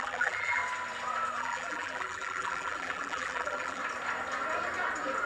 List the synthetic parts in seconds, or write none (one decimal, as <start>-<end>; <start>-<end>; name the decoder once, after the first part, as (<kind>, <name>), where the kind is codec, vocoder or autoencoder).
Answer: 0.0-0.6 (vocoder, BigVGAN v2); 1.4-3.8